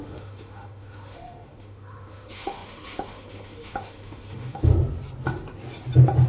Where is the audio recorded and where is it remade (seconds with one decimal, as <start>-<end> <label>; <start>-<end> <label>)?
0.0-4.7 remade; 4.7-6.3 recorded